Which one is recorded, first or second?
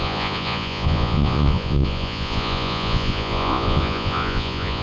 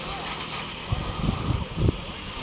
second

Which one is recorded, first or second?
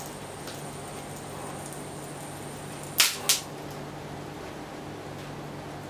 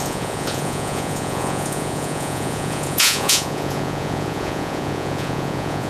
first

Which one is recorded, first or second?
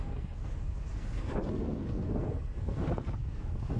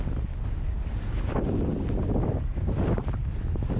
second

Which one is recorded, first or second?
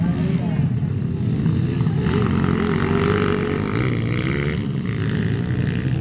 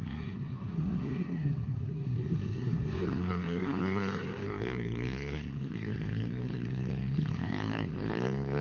first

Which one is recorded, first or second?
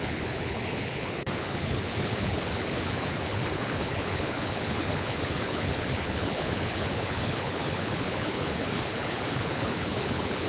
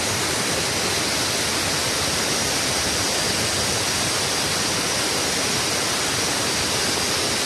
second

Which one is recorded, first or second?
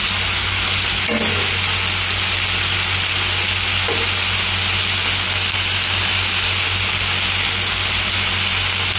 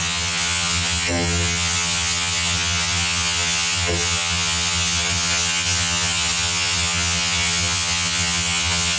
first